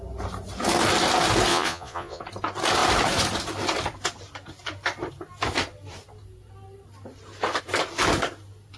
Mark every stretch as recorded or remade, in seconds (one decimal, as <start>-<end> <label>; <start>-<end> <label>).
0.0-1.5 recorded; 1.5-2.2 remade; 2.2-8.8 recorded